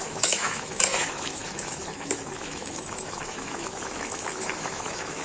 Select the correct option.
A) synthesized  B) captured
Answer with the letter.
A